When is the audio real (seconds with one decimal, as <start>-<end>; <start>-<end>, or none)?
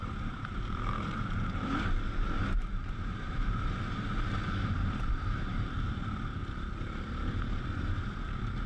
6.4-7.8